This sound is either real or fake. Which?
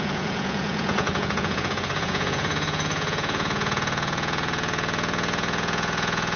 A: fake